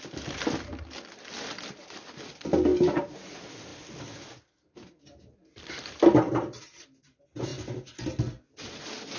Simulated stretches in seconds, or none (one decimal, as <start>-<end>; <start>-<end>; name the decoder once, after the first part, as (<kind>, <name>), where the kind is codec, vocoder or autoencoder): none